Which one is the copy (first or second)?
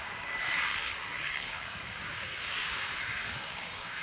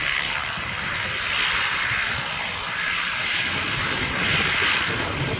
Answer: first